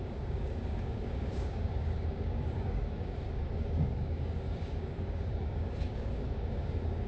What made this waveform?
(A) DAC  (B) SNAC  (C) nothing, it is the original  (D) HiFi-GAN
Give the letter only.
A